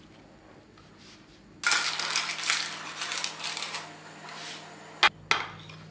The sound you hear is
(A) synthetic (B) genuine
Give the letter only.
B